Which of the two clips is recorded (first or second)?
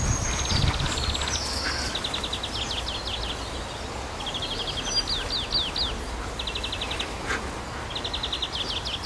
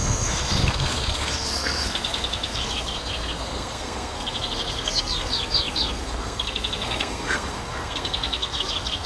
first